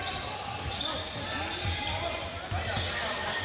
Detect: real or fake real